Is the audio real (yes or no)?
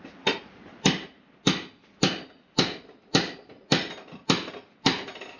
yes